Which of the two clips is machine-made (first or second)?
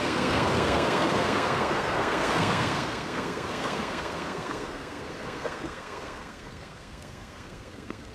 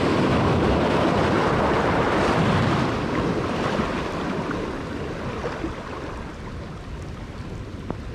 first